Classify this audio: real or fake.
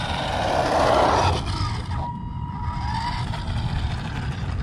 real